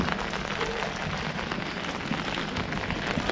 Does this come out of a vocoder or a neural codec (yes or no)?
no